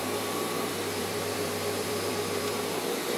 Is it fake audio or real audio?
fake